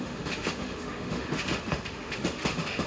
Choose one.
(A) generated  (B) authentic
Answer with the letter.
A